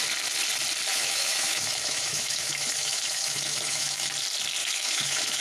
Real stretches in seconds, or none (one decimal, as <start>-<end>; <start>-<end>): 0.0-0.9; 4.1-4.6